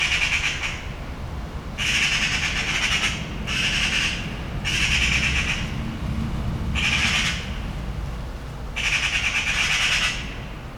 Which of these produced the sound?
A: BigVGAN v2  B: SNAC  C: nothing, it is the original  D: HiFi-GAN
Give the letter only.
C